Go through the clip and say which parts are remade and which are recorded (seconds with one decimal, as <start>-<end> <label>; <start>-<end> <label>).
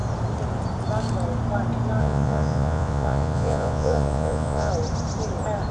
0.0-2.0 recorded; 2.0-4.7 remade; 4.7-5.7 recorded